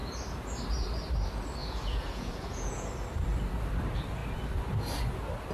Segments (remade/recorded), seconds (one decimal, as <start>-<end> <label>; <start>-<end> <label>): 0.0-1.6 recorded; 1.6-2.9 remade; 2.9-5.5 recorded